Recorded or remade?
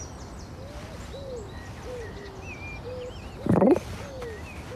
recorded